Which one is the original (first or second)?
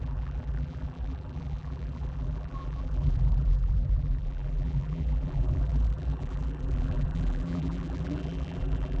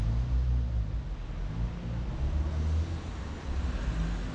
second